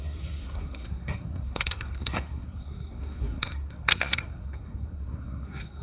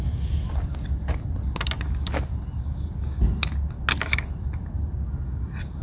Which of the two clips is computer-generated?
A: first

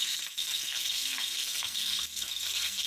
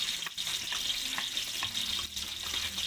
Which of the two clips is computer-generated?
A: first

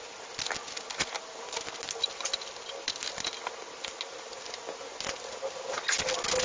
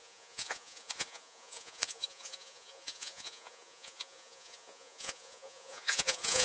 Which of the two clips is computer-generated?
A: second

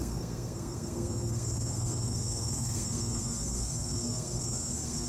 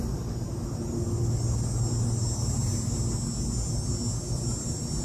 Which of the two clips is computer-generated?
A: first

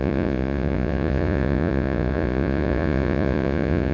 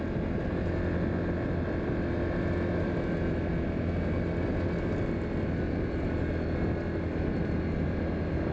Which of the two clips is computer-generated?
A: first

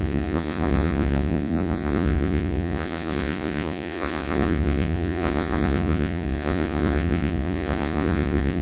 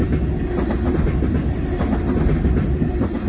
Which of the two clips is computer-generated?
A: first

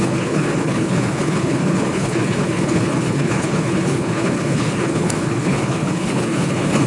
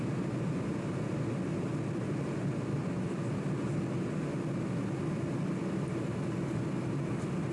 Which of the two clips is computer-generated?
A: first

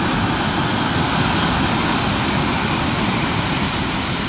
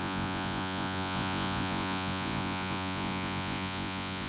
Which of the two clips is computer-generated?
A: second